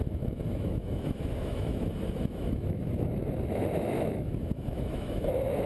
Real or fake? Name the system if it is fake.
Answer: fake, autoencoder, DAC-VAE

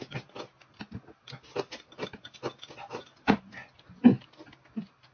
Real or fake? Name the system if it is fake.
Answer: real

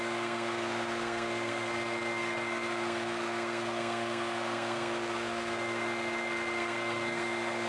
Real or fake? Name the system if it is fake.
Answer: fake, codec, SNAC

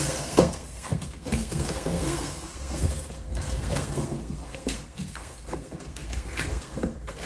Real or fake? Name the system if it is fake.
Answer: fake, codec, SNAC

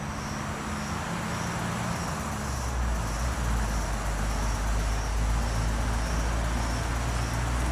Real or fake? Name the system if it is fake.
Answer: real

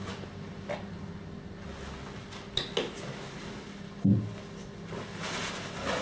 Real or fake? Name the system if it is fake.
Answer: real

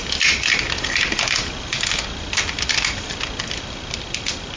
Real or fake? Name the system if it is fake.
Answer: real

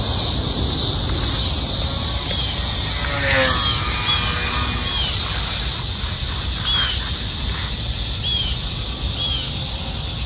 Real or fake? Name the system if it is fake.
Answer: real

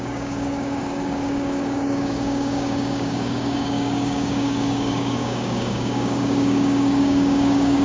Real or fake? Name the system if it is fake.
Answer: fake, codec, DAC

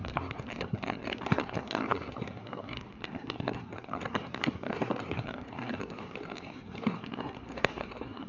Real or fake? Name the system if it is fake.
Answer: fake, codec, SNAC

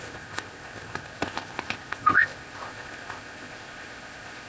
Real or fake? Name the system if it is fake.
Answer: fake, codec, ZipCodec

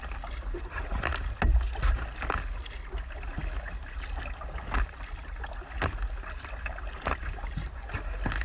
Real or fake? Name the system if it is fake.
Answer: real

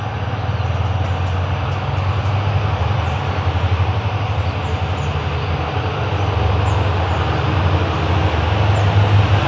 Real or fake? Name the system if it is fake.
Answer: real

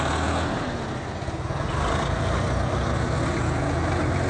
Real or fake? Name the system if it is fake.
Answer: real